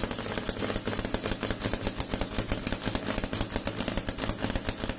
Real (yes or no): yes